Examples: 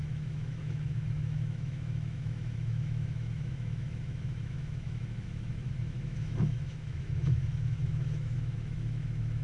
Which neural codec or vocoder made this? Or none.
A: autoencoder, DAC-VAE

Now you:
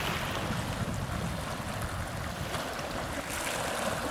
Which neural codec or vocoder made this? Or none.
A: none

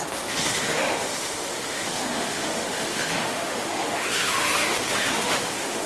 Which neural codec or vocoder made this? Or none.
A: autoencoder, DAC-VAE